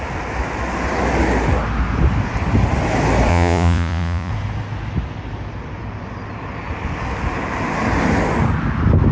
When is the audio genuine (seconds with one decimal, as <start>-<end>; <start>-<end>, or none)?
0.0-3.3; 4.3-9.1